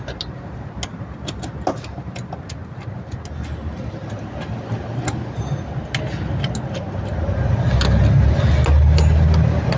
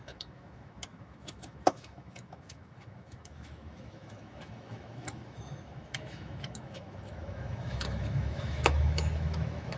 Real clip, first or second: first